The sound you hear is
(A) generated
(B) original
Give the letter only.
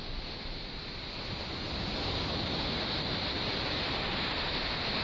B